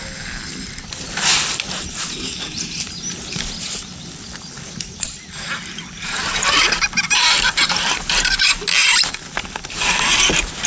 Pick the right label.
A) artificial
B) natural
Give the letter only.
B